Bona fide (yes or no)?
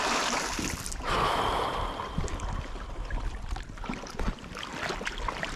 yes